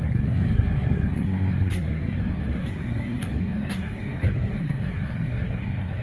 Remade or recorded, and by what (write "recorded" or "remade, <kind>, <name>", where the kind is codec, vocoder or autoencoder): remade, codec, SNAC